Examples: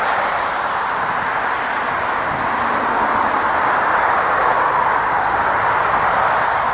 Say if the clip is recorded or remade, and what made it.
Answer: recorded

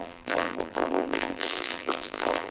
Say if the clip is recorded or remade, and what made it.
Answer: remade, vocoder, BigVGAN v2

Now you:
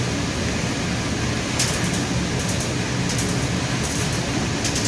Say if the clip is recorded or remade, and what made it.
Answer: recorded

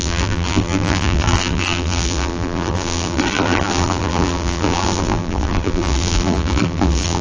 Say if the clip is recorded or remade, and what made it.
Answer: remade, vocoder, BigVGAN v2